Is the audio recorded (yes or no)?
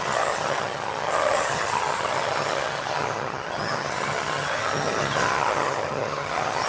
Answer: no